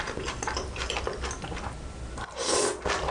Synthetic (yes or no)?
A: no